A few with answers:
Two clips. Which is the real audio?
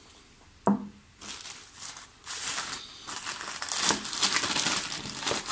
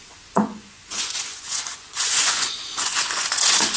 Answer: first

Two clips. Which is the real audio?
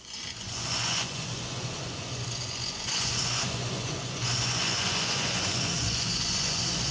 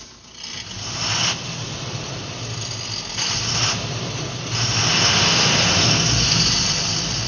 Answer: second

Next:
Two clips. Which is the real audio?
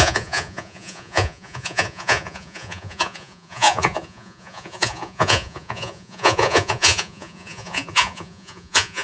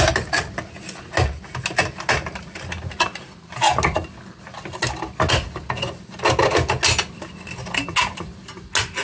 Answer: second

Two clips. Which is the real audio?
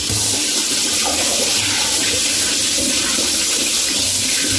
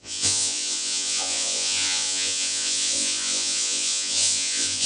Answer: first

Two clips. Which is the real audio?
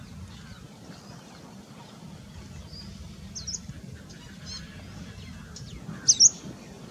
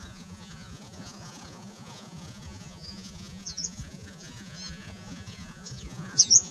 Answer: first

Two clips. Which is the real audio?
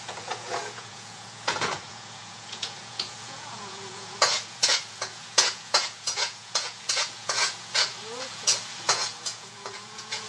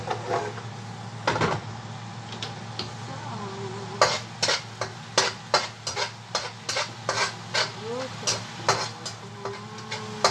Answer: second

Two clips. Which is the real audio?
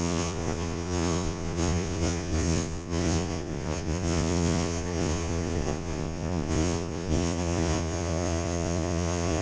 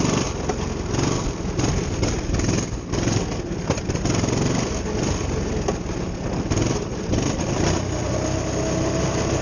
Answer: second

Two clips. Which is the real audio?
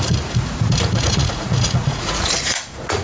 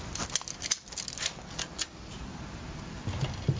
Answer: second